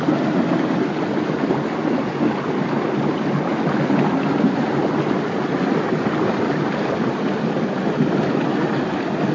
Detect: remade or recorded recorded